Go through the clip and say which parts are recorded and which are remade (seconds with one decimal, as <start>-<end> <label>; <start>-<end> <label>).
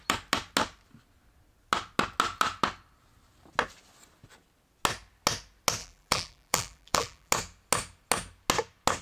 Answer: 0.0-5.8 recorded; 5.8-7.3 remade; 7.3-9.0 recorded